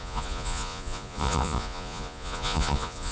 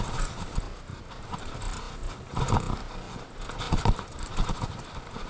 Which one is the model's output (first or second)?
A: first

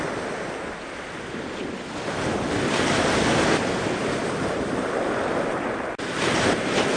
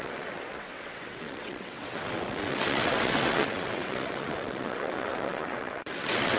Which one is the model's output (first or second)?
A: second